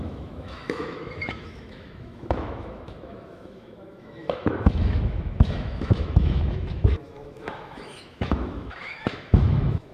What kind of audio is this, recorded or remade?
remade